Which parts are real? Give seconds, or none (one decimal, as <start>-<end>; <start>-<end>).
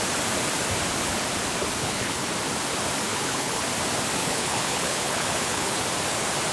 0.0-1.8; 2.3-3.1; 3.6-4.2; 5.8-6.5